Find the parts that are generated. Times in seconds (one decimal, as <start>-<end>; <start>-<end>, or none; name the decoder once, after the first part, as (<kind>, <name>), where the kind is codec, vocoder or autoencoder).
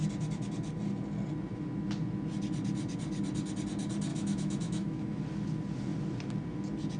4.1-5.2 (autoencoder, DAC-VAE)